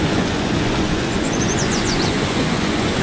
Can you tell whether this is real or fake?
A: fake